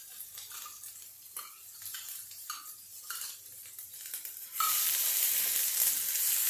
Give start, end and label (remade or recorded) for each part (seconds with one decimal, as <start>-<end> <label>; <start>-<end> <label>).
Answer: 0.0-1.6 recorded; 1.6-4.9 remade; 4.9-6.5 recorded